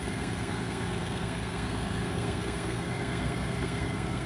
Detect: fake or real fake